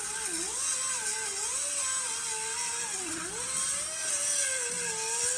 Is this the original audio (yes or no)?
yes